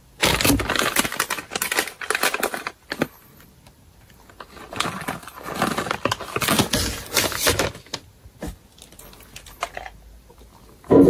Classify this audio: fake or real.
real